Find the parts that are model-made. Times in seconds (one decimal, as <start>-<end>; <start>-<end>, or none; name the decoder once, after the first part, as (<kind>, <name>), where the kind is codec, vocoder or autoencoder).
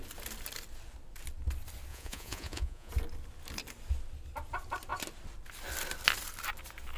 1.9-2.9 (vocoder, Vocos)